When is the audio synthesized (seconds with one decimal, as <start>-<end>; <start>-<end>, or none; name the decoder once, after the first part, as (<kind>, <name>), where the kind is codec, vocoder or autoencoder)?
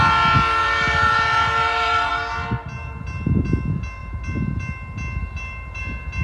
0.6-2.1 (vocoder, BigVGAN v2); 4.0-4.6; 5.2-5.8